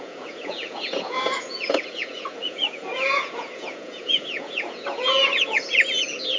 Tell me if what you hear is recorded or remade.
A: remade